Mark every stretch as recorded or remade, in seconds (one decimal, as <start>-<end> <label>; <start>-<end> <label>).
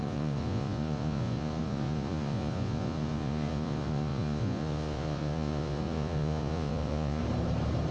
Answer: 0.0-7.2 remade; 7.2-7.9 recorded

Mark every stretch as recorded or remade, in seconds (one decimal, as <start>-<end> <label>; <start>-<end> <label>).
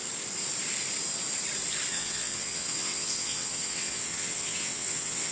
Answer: 0.0-1.9 recorded; 1.9-5.3 remade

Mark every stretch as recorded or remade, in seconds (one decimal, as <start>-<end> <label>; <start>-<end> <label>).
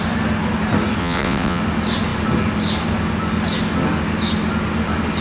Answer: 0.0-1.0 recorded; 1.0-1.6 remade; 1.6-5.2 recorded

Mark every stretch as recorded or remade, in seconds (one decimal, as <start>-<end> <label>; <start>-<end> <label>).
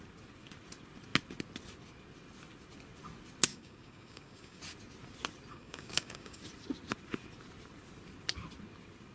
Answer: 0.0-3.5 recorded; 3.5-4.6 remade; 4.6-5.5 recorded; 5.5-6.4 remade; 6.4-9.1 recorded